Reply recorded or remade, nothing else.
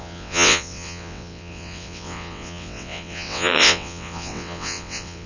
remade